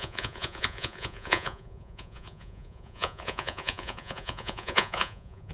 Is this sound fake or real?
fake